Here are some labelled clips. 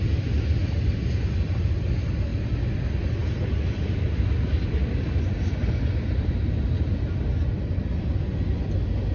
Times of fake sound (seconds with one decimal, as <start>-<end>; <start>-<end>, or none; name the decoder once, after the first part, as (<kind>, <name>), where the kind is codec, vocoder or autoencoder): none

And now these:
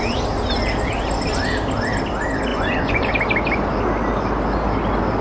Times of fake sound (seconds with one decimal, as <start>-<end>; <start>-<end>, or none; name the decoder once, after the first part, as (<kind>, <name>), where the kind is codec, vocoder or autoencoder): 2.5-3.1 (vocoder, Vocos)

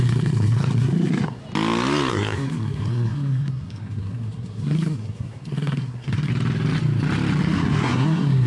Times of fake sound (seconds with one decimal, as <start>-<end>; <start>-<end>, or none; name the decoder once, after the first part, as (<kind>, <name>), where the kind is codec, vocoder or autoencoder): 0.0-1.4 (codec, SNAC); 2.1-6.3; 7.4-8.5

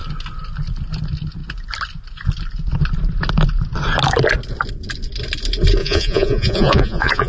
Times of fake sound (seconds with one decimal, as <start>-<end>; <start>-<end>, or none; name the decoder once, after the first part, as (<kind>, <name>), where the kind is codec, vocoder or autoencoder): 5.8-7.3 (vocoder, Vocos)